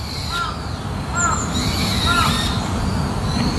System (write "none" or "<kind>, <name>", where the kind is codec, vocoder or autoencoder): none